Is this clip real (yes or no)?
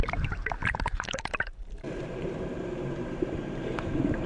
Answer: no